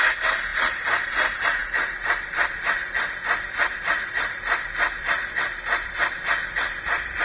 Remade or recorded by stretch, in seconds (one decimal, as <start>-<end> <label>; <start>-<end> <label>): 0.0-7.2 remade